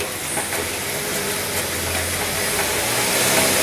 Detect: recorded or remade recorded